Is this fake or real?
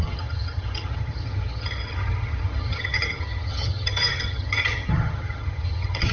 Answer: fake